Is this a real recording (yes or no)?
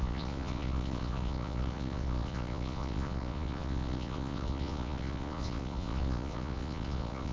no